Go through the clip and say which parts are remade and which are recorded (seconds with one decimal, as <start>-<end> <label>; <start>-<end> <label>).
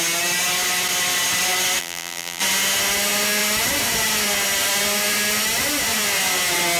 0.0-1.8 recorded; 1.8-2.4 remade; 2.4-6.8 recorded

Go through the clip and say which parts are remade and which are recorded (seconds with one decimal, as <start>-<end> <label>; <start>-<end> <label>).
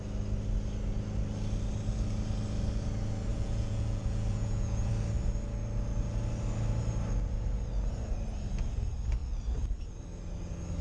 0.0-3.3 recorded; 3.3-4.9 remade; 4.9-10.8 recorded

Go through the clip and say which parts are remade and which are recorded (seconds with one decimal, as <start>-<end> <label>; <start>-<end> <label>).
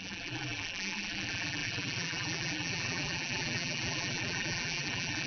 0.0-5.3 remade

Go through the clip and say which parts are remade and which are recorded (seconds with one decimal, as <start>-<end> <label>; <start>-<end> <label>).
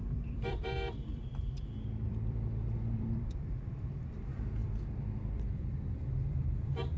0.0-1.3 remade; 1.3-2.1 recorded; 2.1-7.0 remade